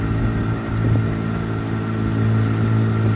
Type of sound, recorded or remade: recorded